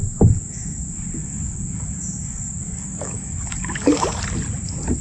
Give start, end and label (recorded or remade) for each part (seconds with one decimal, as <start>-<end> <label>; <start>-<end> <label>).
0.0-1.2 recorded; 1.2-4.2 remade; 4.2-5.0 recorded